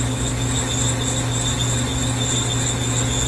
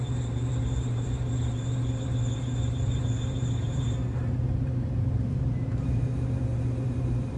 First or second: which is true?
first